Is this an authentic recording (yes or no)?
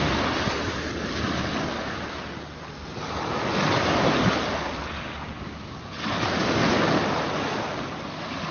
yes